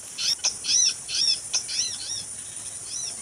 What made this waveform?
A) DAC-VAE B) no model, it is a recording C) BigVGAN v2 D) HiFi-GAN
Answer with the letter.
B